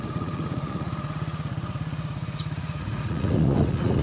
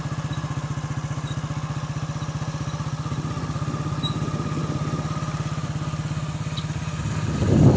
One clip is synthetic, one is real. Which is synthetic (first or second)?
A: first